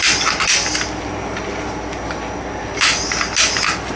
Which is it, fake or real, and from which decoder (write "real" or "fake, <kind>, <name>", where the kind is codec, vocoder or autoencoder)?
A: real